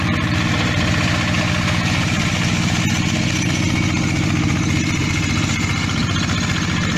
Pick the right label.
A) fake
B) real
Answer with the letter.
B